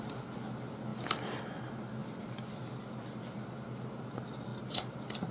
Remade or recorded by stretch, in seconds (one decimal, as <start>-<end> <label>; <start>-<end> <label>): 0.0-5.3 recorded